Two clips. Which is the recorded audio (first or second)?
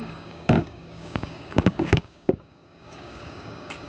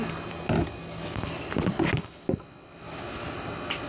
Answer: second